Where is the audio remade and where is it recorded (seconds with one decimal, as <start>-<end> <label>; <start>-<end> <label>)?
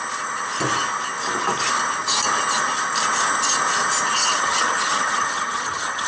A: 0.0-4.2 recorded; 4.2-6.1 remade